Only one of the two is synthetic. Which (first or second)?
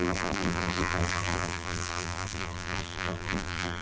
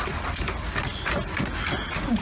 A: first